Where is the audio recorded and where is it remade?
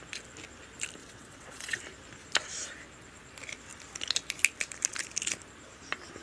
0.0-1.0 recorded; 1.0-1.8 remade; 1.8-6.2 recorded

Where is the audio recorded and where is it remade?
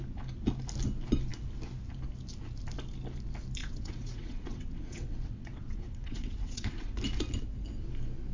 0.0-3.6 recorded; 3.6-6.9 remade; 6.9-8.3 recorded